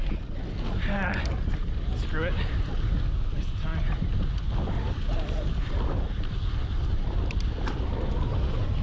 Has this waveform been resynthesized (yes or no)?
no